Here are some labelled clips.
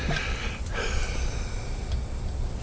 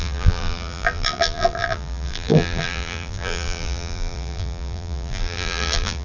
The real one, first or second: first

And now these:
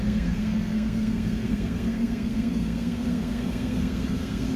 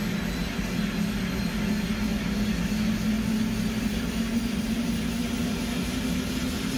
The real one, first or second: second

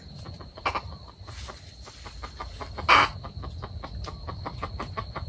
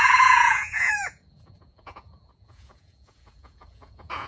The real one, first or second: first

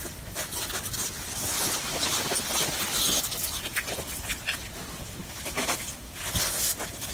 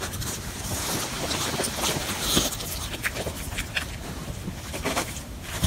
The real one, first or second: first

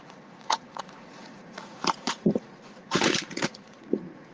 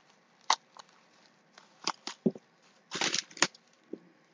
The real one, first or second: second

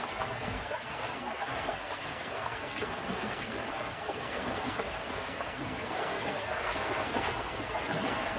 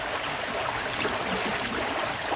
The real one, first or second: second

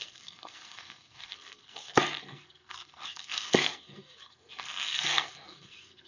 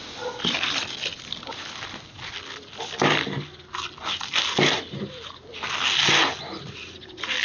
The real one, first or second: second